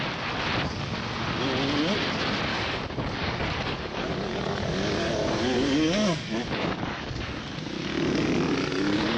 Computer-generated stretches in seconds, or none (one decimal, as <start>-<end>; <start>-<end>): 2.5-7.4; 8.7-9.2